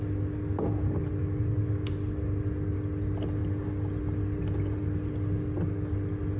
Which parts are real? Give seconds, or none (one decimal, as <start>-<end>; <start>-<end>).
0.0-6.4